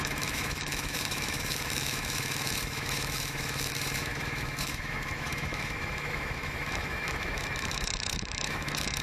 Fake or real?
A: fake